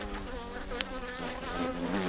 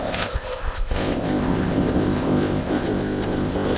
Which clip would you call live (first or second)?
first